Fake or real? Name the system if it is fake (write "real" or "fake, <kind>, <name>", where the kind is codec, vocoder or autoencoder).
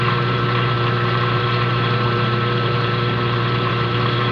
fake, vocoder, BigVGAN v2